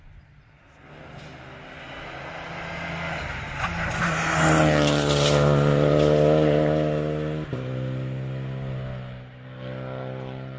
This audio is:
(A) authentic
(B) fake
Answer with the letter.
A